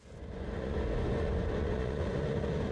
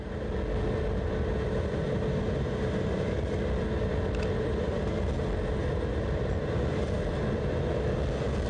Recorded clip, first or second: second